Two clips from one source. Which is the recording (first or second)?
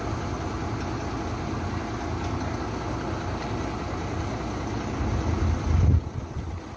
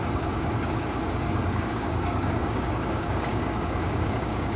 first